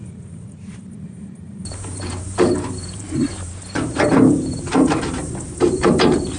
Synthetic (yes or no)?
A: yes